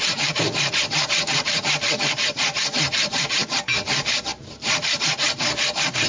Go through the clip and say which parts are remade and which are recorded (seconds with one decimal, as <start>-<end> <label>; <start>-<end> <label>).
0.0-6.1 remade